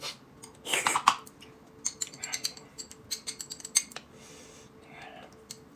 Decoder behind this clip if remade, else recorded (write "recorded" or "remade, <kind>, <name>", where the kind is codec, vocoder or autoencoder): recorded